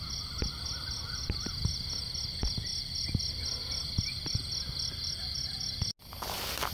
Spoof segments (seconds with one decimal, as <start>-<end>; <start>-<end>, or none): none